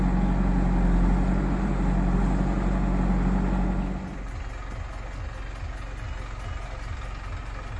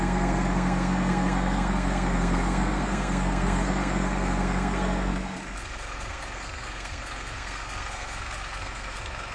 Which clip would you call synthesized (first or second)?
second